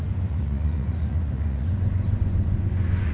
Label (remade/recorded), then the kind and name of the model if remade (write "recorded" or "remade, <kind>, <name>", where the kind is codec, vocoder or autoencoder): remade, vocoder, Vocos